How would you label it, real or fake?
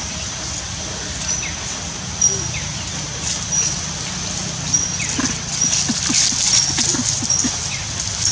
real